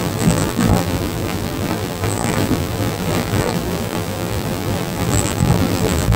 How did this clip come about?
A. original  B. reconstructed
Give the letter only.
B